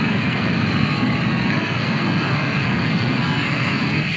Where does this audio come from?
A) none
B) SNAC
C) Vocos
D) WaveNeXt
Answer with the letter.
B